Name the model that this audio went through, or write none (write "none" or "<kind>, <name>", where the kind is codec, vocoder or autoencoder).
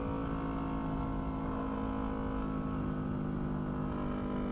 none